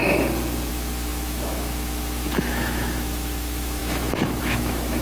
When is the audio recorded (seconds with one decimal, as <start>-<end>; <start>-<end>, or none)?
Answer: 0.0-0.7